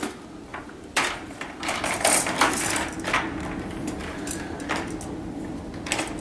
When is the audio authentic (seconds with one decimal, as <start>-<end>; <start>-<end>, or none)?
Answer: 0.0-0.5; 2.6-4.0; 4.9-6.2